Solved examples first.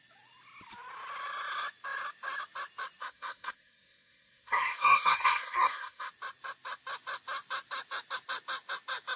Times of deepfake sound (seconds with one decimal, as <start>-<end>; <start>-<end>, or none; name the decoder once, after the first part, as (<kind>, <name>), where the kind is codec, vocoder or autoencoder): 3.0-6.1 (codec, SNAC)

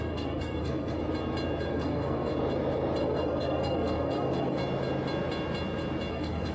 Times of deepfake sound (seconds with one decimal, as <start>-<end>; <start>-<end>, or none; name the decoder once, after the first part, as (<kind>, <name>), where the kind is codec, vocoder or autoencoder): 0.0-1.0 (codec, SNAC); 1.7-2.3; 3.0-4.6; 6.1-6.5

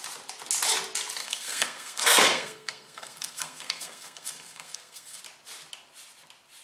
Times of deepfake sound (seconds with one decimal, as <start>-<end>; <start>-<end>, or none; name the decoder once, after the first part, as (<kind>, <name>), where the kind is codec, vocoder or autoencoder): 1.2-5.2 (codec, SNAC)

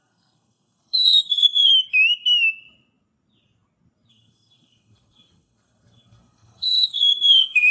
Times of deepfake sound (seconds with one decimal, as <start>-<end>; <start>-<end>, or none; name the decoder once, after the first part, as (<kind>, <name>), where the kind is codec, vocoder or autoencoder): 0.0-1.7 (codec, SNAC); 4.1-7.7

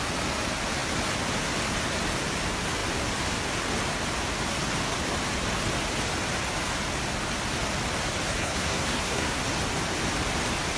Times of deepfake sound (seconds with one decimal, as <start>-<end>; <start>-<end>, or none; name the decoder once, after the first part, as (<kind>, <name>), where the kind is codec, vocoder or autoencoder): 8.4-9.4 (codec, SNAC)

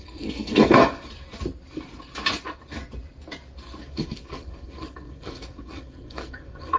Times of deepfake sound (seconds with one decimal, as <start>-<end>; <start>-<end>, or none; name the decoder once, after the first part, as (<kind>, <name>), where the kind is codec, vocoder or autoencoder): 0.0-0.8 (codec, SNAC); 3.8-6.8

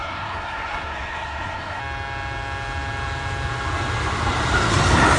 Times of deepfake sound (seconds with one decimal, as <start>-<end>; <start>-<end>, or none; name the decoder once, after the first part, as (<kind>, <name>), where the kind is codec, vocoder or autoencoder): 0.0-1.8 (codec, SNAC)